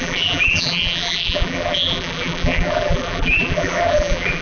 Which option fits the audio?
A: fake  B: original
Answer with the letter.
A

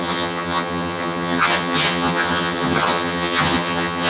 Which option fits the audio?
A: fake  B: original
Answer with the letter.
A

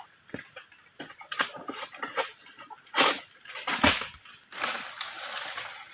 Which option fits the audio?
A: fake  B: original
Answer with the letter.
B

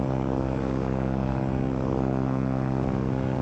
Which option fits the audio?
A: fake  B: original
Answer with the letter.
A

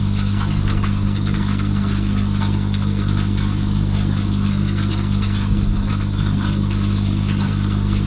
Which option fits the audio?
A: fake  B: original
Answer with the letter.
A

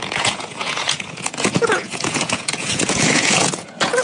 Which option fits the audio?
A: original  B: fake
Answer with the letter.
B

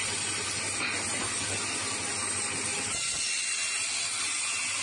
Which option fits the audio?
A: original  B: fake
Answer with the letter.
A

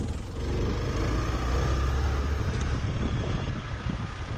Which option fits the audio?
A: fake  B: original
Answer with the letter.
B